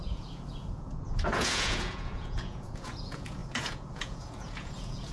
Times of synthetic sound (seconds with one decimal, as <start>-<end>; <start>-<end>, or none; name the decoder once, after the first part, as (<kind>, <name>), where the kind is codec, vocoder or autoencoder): 0.0-5.1 (vocoder, Vocos)